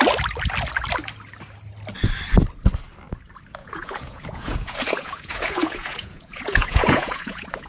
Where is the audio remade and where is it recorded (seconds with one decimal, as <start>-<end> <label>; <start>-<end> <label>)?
0.0-3.6 recorded; 3.6-7.7 remade